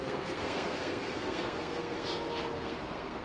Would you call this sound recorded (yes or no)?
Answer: no